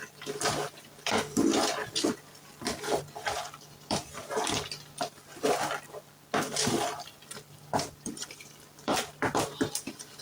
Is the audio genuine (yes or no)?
no